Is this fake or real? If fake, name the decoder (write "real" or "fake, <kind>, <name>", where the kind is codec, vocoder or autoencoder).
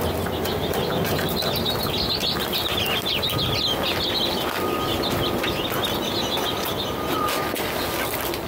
real